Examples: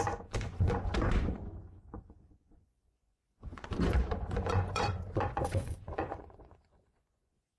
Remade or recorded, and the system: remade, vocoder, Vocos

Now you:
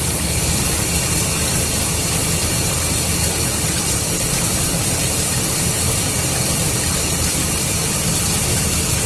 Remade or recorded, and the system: recorded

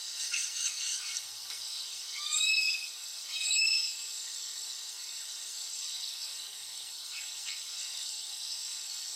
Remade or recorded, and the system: remade, codec, SNAC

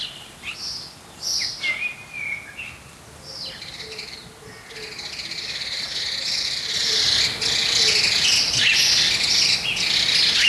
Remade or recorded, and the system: recorded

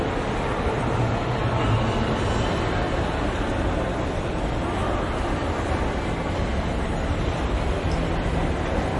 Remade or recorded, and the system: recorded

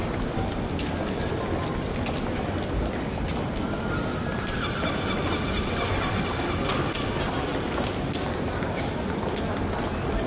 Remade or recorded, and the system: recorded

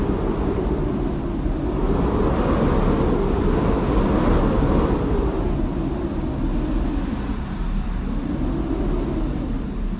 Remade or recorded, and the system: recorded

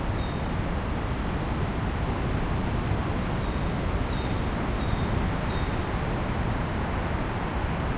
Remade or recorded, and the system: recorded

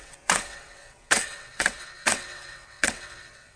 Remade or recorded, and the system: remade, vocoder, WaveNeXt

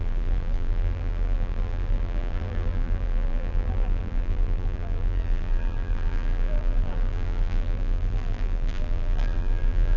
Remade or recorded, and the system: remade, vocoder, BigVGAN v2